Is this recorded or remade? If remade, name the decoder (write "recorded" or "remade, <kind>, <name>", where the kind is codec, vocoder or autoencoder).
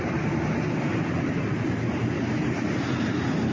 recorded